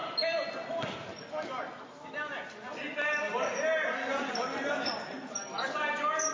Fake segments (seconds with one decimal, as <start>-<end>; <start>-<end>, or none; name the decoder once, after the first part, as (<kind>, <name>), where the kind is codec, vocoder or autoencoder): none